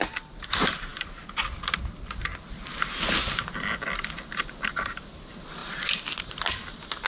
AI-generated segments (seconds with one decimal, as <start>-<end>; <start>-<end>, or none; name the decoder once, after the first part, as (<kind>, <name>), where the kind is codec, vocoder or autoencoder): none